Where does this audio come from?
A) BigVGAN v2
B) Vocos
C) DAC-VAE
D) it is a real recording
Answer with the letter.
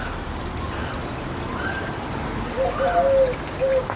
D